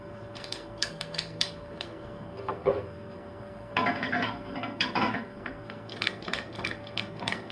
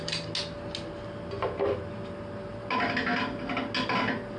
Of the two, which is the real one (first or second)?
second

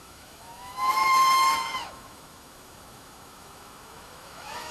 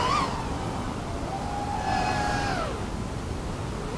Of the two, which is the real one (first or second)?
second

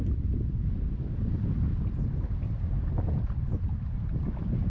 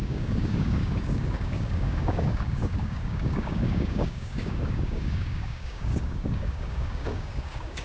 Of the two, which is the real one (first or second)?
first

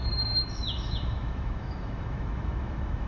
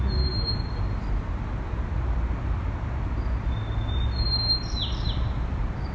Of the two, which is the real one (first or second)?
second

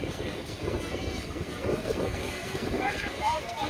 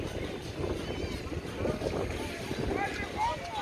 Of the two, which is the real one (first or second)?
second